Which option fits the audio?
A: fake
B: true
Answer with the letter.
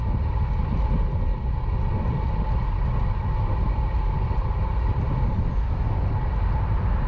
B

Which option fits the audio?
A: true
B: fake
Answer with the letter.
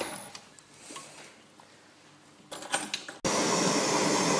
A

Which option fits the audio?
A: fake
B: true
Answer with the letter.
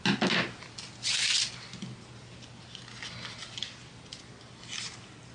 B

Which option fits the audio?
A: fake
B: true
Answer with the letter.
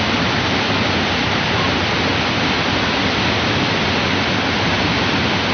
B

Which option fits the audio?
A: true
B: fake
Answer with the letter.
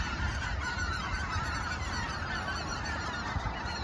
A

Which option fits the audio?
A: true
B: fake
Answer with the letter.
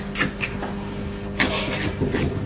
A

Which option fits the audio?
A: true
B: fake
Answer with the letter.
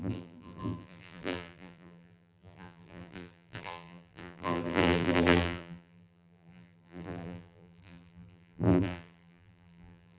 B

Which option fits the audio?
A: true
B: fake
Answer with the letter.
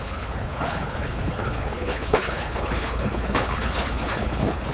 B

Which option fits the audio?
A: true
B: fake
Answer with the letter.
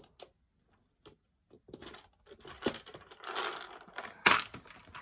A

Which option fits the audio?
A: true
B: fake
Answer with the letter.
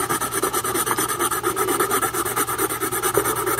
A